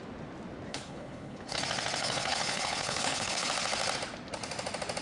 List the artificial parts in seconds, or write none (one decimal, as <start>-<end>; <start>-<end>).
0.7-1.6; 2.0-3.5